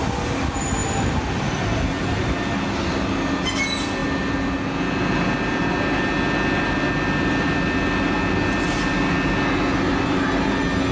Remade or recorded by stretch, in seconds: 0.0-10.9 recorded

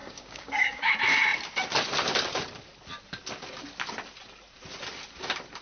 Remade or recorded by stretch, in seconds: 0.0-0.9 remade; 0.9-5.6 recorded